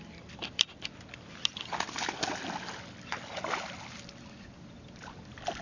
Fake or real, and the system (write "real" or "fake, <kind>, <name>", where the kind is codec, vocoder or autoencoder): real